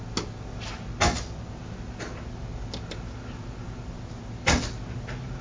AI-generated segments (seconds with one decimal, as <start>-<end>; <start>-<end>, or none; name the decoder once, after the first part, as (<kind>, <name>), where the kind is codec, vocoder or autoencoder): none